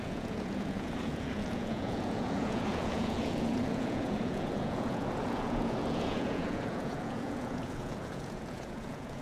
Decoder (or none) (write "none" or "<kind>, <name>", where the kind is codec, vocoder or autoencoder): vocoder, Vocos